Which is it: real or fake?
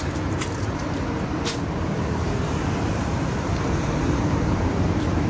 fake